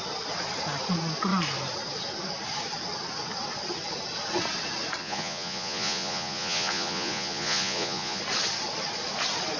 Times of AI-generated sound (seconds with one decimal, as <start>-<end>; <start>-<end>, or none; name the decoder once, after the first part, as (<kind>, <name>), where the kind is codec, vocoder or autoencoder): 5.0-8.2 (vocoder, Vocos)